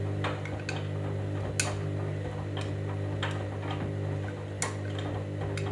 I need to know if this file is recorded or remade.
recorded